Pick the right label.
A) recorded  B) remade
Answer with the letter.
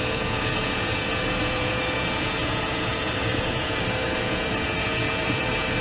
B